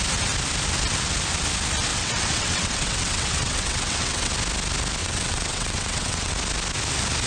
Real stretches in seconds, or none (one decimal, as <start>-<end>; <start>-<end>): 0.0-1.9; 4.3-5.0; 6.3-7.3